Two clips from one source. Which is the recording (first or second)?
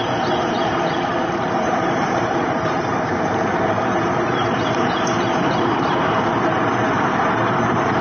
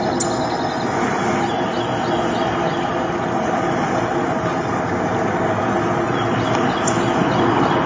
second